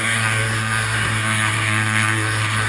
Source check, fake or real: fake